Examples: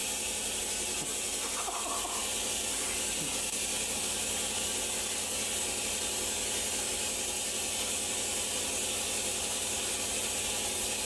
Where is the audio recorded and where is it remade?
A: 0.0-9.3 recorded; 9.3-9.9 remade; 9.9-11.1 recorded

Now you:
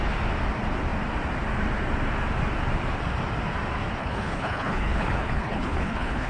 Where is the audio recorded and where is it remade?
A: 0.0-4.0 recorded; 4.0-6.3 remade

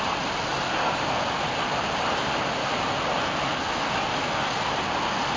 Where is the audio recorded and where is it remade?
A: 0.0-5.4 recorded

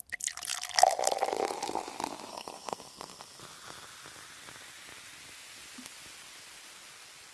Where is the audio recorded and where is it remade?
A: 0.0-2.3 recorded; 2.3-3.4 remade; 3.4-7.3 recorded